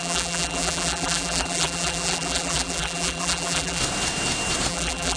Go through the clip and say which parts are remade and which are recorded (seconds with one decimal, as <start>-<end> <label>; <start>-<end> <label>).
0.0-3.8 remade; 3.8-4.7 recorded; 4.7-5.2 remade